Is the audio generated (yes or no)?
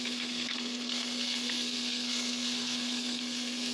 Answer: yes